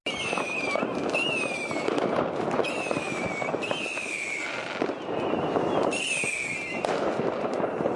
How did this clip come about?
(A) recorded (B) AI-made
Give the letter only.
A